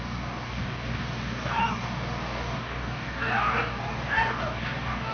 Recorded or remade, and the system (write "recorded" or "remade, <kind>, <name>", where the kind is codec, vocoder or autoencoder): remade, codec, DAC